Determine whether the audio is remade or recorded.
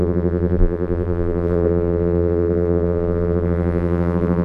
remade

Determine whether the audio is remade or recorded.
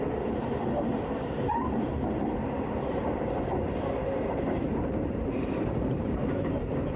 remade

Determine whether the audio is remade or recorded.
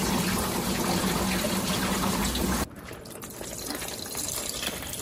recorded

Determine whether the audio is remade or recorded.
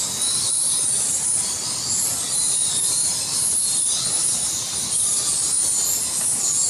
recorded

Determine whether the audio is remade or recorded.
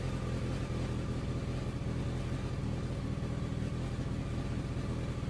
recorded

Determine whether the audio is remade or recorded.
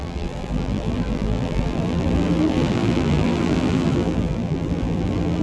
remade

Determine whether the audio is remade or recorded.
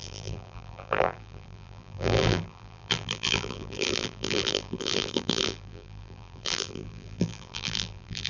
remade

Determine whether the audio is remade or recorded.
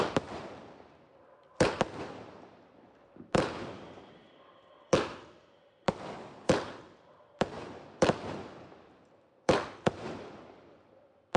remade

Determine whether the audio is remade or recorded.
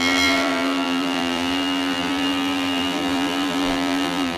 remade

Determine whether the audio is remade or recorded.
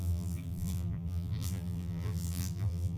remade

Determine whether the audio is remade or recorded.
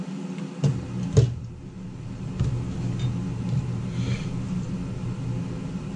recorded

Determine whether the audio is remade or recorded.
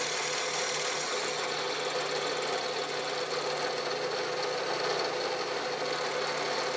recorded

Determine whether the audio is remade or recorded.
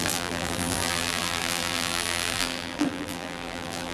remade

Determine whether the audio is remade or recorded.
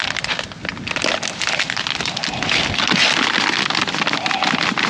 recorded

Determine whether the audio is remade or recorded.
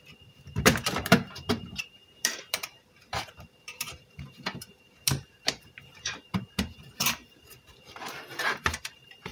remade